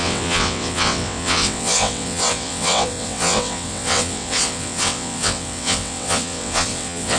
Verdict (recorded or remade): remade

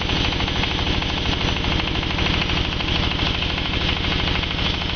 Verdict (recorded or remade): recorded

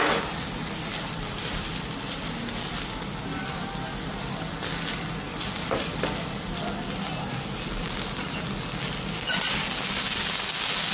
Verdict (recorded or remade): recorded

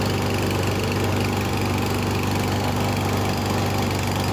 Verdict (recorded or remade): recorded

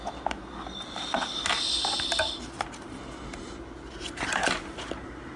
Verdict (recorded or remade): recorded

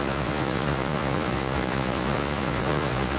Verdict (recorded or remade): remade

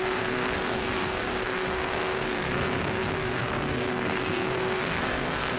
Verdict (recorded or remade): remade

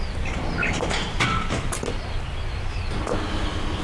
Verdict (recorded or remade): recorded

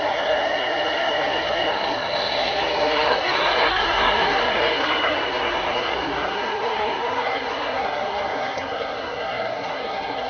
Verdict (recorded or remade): remade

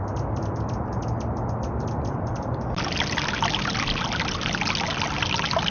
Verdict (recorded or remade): recorded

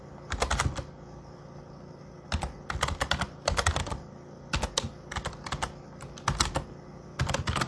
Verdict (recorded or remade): recorded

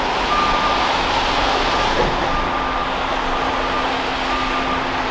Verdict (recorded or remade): recorded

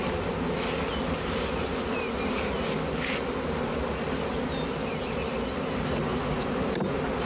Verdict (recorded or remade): recorded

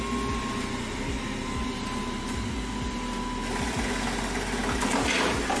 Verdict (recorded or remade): recorded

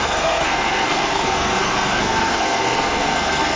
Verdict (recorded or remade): remade